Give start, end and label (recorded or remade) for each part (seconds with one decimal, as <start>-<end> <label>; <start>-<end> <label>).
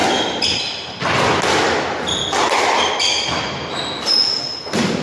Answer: 0.0-5.0 recorded